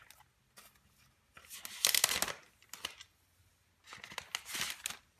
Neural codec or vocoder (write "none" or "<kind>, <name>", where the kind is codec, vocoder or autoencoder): none